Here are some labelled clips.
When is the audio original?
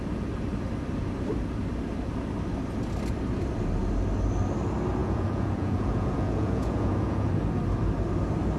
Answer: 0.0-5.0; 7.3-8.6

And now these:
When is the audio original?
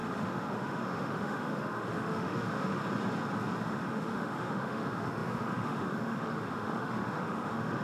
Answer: 2.8-3.6